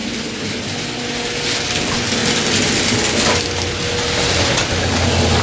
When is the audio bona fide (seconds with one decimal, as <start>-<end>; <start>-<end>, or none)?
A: 0.0-5.4